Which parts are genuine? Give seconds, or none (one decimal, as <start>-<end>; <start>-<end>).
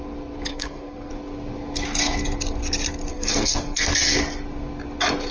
0.0-0.5; 1.1-3.1; 3.9-5.3